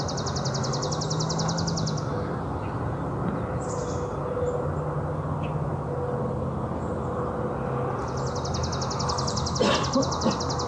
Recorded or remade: recorded